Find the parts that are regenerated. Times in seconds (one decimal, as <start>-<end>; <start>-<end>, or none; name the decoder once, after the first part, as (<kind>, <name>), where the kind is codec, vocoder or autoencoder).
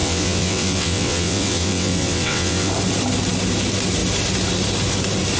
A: 0.0-2.7 (vocoder, WaveNeXt)